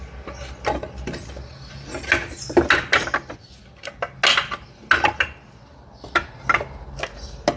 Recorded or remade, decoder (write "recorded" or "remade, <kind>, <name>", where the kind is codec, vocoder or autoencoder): recorded